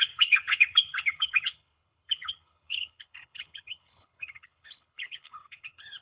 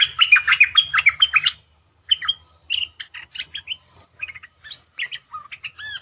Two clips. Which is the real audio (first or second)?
second